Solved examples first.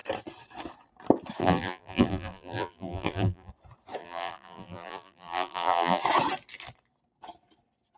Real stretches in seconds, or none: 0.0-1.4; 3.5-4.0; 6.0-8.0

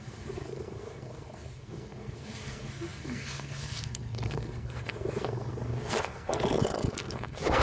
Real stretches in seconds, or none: none

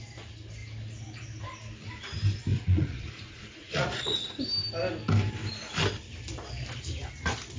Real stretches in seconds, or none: 0.0-2.5; 4.4-7.6

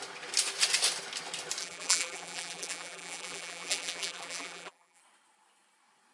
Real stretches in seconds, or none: 0.0-1.6; 5.0-6.1

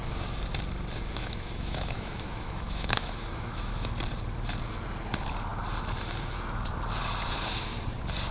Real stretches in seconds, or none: 0.0-1.2; 3.7-8.3